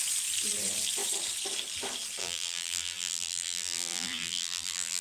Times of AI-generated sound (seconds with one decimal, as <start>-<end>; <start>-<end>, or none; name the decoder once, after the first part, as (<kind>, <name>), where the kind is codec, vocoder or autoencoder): 2.2-5.0 (vocoder, BigVGAN v2)